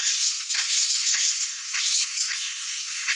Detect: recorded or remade remade